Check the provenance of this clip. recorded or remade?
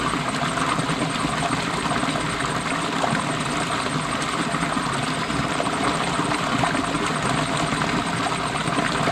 recorded